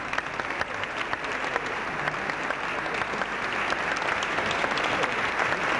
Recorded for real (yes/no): yes